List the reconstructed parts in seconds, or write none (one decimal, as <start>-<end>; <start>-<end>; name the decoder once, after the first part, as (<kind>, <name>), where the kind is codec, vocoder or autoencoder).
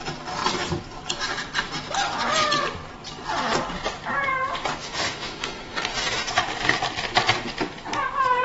4.8-6.3 (autoencoder, DAC-VAE)